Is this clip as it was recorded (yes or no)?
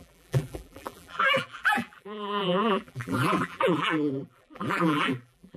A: no